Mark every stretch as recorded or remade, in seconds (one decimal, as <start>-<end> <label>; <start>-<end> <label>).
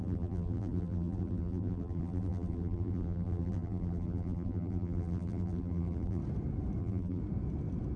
0.0-6.2 remade; 6.2-6.8 recorded; 6.8-7.2 remade; 7.2-8.0 recorded